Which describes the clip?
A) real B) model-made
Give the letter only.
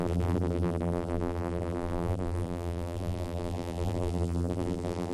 B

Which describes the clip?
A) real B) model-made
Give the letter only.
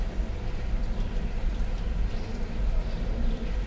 B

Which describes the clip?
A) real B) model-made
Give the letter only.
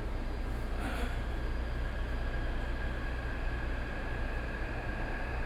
A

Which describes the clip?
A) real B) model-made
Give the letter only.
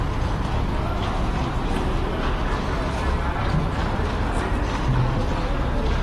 A